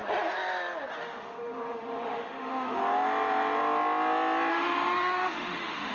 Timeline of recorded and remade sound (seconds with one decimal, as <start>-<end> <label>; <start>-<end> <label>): 0.0-0.9 recorded; 0.9-2.8 remade; 2.8-4.5 recorded; 4.5-5.9 remade